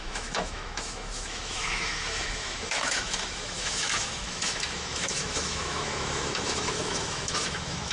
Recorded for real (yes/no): no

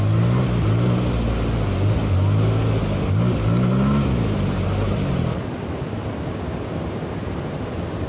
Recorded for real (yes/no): yes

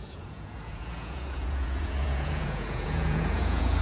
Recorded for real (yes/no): no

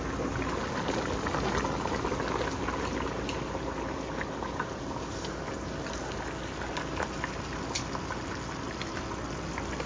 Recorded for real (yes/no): yes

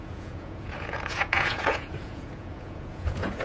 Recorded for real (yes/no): no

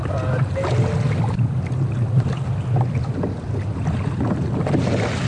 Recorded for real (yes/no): yes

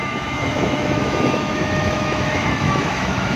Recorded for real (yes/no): no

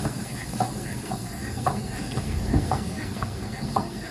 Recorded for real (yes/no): no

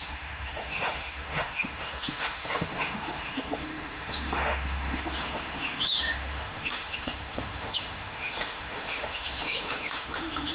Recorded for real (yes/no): no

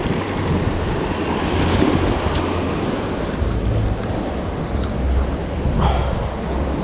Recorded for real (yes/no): yes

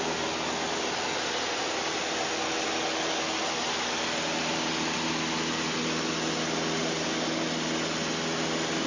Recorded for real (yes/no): yes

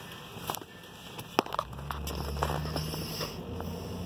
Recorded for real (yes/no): yes